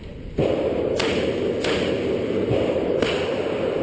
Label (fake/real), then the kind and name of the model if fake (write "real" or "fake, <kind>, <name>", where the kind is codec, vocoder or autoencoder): fake, vocoder, BigVGAN v2